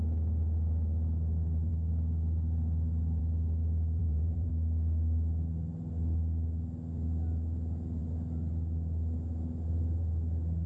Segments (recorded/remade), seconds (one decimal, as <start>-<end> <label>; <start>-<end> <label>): 0.0-4.0 recorded; 4.0-4.5 remade; 4.5-10.7 recorded

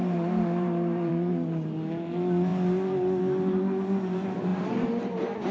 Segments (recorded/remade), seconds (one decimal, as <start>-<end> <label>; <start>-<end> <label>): 0.0-1.1 remade; 1.1-4.5 recorded; 4.5-5.5 remade

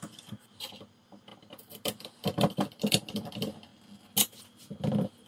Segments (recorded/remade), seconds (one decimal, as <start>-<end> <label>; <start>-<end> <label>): 0.0-3.7 remade; 3.7-4.4 recorded; 4.4-5.3 remade

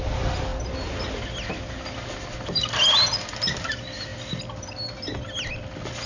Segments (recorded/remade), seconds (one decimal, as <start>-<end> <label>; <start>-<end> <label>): 0.0-6.1 recorded

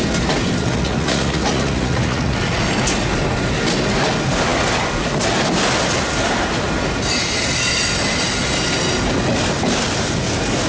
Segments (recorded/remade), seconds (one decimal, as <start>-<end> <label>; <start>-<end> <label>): 0.0-0.6 recorded; 0.6-2.6 remade; 2.6-10.7 recorded

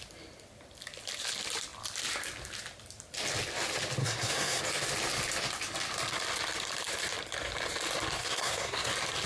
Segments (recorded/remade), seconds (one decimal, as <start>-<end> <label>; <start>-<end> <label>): 0.0-4.0 recorded; 4.0-4.6 remade; 4.6-8.2 recorded; 8.2-8.9 remade; 8.9-9.3 recorded